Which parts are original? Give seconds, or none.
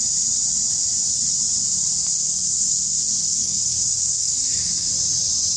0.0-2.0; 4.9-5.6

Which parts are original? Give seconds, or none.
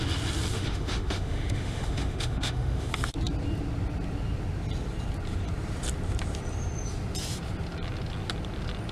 0.0-0.5; 2.9-8.9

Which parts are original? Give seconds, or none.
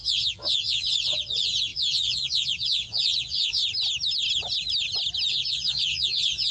3.6-5.3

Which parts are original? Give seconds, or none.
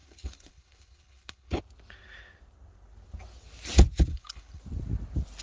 1.6-4.1; 4.6-5.4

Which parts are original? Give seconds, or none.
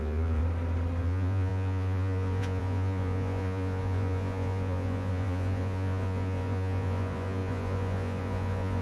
0.4-1.0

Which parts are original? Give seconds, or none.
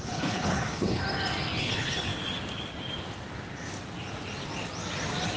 1.0-1.6; 2.1-5.4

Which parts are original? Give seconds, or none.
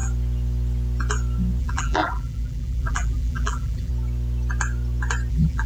0.0-1.6; 3.9-5.3